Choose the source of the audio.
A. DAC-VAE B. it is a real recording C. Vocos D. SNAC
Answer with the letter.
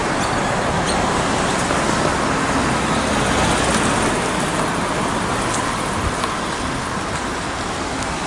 B